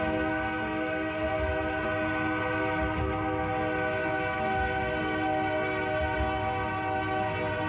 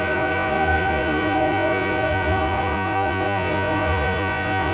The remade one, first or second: second